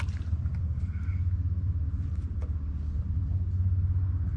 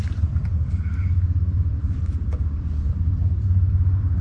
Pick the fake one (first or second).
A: second